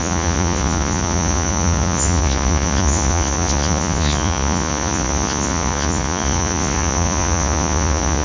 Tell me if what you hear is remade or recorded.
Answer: remade